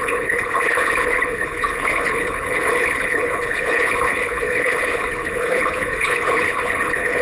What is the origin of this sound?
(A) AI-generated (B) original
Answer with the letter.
A